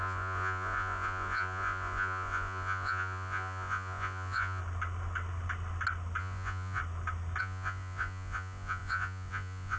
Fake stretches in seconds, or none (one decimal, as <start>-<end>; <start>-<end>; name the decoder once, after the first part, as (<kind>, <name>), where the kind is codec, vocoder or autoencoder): 0.0-4.6 (vocoder, Vocos); 6.2-6.8; 7.4-9.8